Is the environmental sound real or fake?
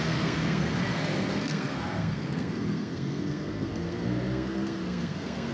fake